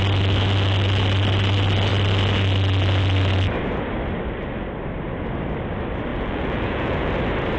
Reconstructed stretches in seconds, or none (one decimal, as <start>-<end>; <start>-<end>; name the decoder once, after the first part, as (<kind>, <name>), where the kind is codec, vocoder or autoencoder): 6.1-7.1 (vocoder, Vocos)